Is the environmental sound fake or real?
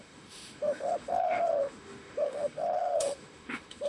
fake